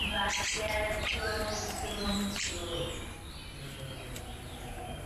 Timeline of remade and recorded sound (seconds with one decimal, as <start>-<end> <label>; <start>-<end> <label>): 0.0-0.5 recorded; 0.5-2.6 remade; 2.6-3.8 recorded; 3.8-5.1 remade